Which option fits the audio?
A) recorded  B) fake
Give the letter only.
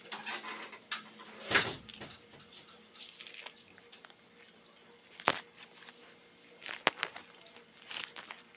A